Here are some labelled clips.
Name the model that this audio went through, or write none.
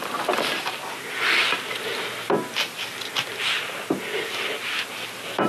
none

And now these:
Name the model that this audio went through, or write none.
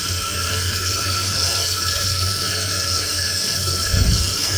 codec, SNAC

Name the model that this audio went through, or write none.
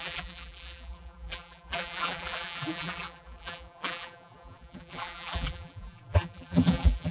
vocoder, BigVGAN v2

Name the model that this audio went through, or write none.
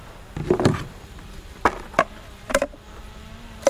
vocoder, BigVGAN v2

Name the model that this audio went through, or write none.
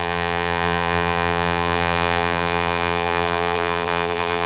vocoder, BigVGAN v2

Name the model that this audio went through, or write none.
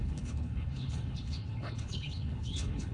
codec, HILCodec